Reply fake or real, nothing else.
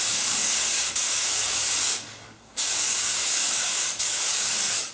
fake